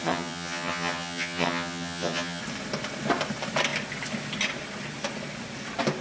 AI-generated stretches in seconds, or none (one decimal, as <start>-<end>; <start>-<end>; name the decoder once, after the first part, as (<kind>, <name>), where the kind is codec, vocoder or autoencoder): 0.0-2.4 (vocoder, HiFi-GAN)